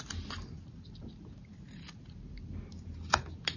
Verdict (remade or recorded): recorded